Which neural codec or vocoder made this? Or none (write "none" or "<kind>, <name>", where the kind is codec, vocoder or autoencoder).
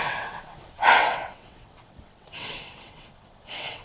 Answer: vocoder, WaveNeXt